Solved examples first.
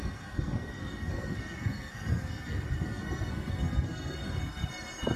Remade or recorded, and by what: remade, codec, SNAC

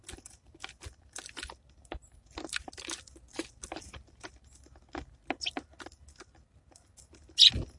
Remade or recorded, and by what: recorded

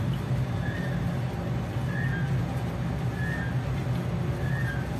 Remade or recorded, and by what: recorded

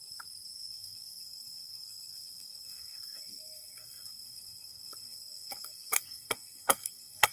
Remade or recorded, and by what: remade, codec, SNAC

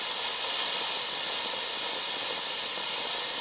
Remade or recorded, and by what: recorded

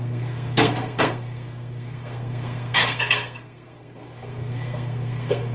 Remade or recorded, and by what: remade, codec, SNAC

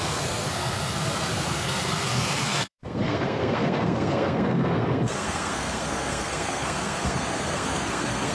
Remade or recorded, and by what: remade, codec, SNAC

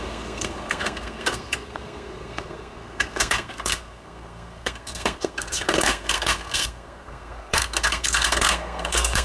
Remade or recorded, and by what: remade, codec, SNAC